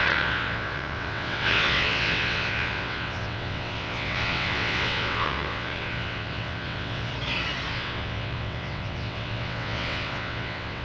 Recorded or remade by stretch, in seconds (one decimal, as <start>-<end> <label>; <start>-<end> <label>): 0.0-7.1 remade; 7.1-7.7 recorded; 7.7-10.8 remade